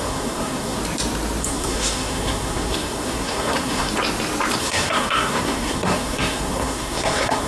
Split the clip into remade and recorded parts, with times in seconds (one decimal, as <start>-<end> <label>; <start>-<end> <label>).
0.0-0.8 remade; 0.8-1.4 recorded; 1.4-3.9 remade; 3.9-4.6 recorded; 4.6-7.5 remade